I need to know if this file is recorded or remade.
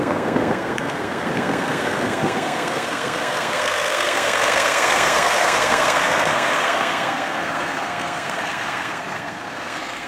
remade